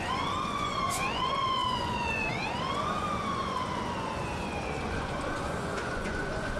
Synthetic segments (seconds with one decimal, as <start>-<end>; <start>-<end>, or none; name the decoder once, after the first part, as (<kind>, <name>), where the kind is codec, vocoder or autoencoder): 0.0-6.6 (vocoder, Vocos)